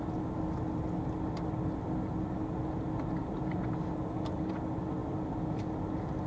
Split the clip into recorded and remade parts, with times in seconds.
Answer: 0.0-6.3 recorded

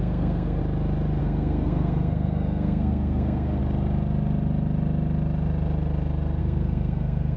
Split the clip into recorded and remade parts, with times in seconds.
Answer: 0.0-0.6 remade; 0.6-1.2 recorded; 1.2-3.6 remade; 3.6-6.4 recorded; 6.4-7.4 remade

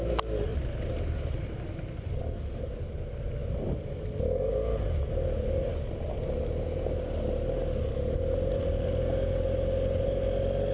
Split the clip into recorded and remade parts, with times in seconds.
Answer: 0.0-0.5 recorded; 0.5-2.2 remade; 2.2-10.7 recorded

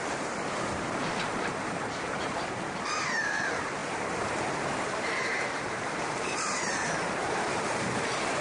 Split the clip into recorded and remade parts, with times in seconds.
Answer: 0.0-8.4 remade